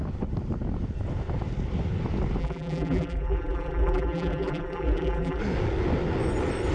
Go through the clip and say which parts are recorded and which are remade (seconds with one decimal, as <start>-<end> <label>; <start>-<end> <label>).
0.0-2.4 recorded; 2.4-5.4 remade; 5.4-6.7 recorded